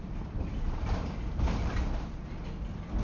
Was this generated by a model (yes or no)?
no